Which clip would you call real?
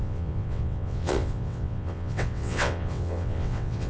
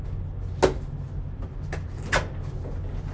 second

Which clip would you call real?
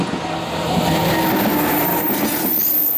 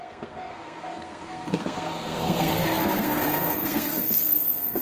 first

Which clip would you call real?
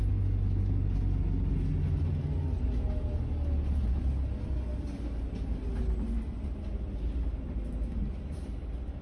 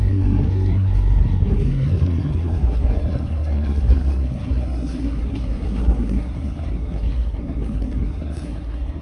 first